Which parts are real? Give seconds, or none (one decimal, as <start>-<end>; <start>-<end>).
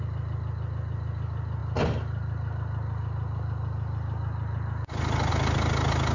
0.0-6.1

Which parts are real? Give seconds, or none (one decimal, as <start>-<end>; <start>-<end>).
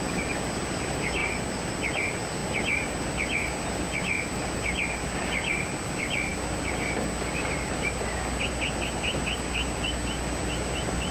0.0-11.1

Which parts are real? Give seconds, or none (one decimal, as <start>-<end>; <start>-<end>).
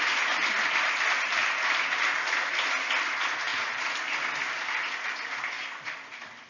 0.0-6.5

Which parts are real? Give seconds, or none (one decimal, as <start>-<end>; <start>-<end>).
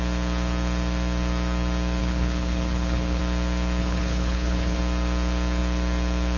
0.0-2.0; 3.2-3.8; 4.8-6.4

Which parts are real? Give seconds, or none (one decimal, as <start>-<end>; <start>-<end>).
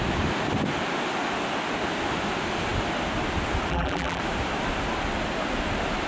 0.0-3.7; 4.2-6.1